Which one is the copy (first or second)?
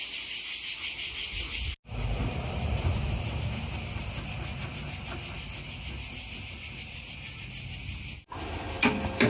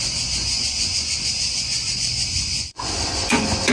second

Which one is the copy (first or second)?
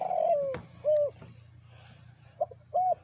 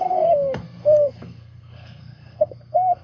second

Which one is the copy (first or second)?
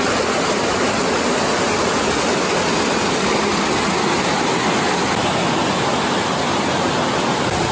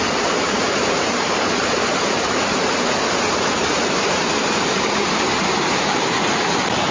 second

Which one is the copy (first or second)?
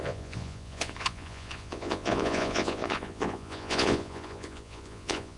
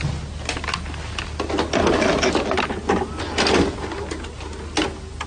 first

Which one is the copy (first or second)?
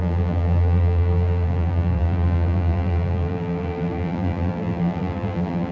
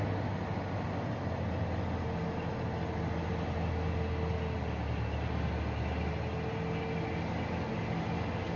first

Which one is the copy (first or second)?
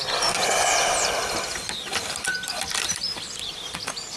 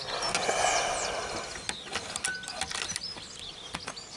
first